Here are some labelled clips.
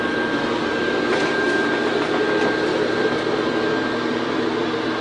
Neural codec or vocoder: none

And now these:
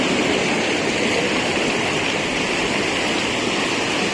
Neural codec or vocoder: none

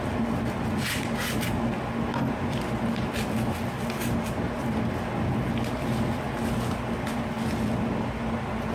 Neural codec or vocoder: none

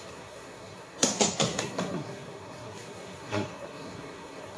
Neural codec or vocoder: codec, SNAC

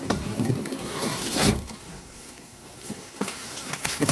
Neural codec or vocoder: codec, SNAC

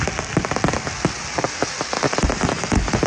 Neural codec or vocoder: none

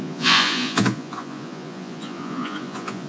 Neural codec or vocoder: vocoder, Vocos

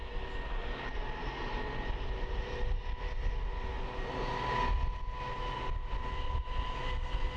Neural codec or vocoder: none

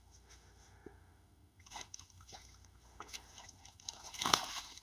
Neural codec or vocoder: autoencoder, DAC-VAE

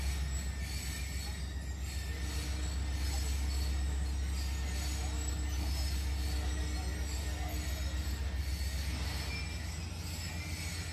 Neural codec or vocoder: none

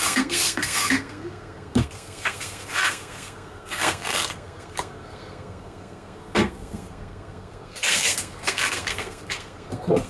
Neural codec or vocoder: codec, SNAC